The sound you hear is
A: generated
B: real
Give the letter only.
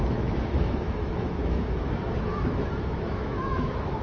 A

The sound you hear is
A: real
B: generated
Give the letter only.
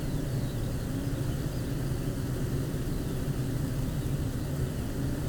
A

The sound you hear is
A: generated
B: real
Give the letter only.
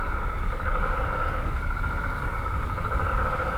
A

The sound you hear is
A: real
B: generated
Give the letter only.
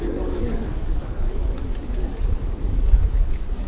B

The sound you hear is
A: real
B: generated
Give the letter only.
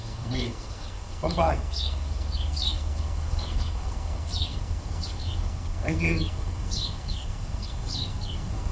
B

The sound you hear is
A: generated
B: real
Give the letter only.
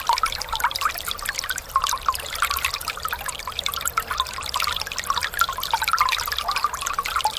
B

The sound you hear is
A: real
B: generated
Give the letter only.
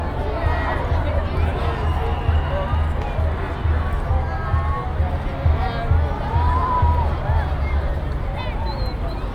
A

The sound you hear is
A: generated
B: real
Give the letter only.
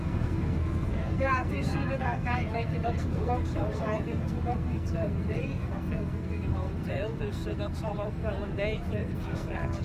A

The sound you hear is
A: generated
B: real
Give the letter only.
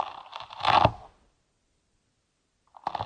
B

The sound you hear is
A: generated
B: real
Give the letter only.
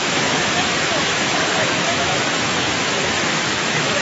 A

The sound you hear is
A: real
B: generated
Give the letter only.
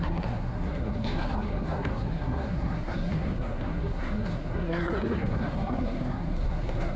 B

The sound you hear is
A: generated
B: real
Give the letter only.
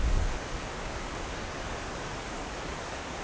A